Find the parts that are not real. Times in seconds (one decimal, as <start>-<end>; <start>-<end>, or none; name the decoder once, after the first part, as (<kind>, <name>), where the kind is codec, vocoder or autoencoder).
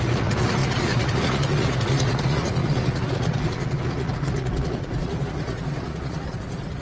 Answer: 0.0-6.8 (vocoder, Vocos)